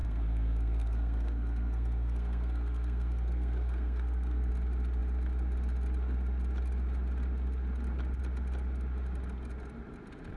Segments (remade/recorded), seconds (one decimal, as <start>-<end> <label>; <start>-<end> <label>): 0.0-4.5 remade; 4.5-10.4 recorded

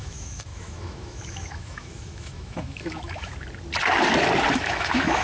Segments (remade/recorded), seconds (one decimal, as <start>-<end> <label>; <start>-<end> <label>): 0.0-3.3 remade; 3.3-4.5 recorded; 4.5-5.2 remade